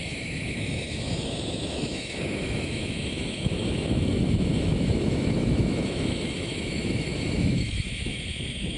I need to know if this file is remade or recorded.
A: remade